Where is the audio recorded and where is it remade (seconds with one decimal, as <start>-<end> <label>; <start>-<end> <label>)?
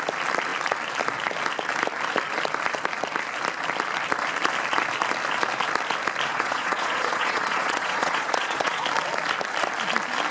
0.0-6.3 recorded; 6.3-8.8 remade; 8.8-10.3 recorded